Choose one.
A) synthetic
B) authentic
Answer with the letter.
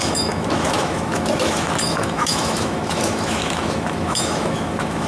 A